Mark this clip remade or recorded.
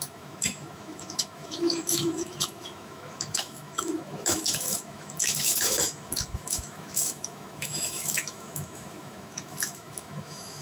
remade